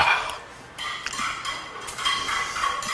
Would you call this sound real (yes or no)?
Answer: yes